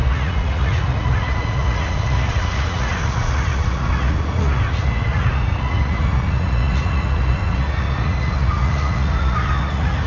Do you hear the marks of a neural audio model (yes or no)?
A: yes